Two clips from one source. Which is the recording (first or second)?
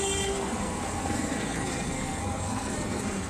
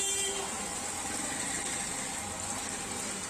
second